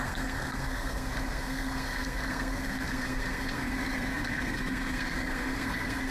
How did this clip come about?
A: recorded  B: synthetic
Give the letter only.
B